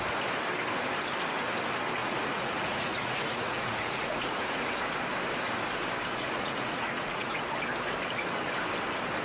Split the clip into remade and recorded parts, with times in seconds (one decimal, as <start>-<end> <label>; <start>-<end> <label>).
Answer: 0.0-2.0 recorded; 2.0-4.7 remade; 4.7-6.1 recorded; 6.1-7.4 remade; 7.4-9.2 recorded